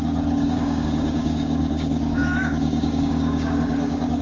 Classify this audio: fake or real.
fake